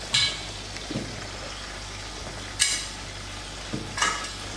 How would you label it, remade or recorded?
recorded